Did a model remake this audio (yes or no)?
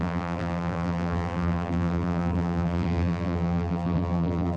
yes